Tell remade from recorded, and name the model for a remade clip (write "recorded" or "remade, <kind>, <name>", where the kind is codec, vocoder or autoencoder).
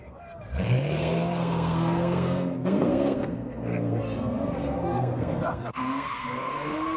remade, codec, SNAC